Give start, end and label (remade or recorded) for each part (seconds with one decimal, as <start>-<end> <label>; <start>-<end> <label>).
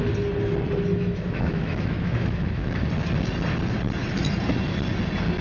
0.0-0.9 recorded; 0.9-2.9 remade; 2.9-5.4 recorded